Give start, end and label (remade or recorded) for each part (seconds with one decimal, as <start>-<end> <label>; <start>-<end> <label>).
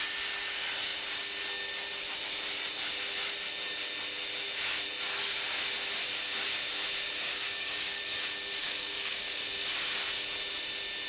0.0-7.3 recorded; 7.3-8.0 remade; 8.0-8.6 recorded; 8.6-9.4 remade; 9.4-11.1 recorded